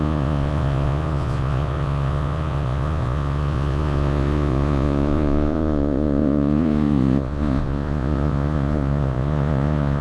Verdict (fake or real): fake